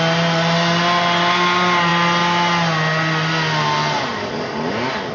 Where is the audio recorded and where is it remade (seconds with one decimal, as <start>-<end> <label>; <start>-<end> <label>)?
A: 0.0-5.1 recorded